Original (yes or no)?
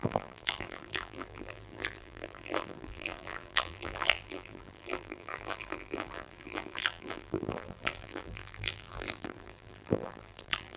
no